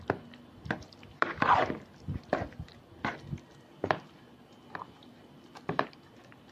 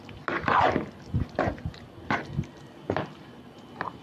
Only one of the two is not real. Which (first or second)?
first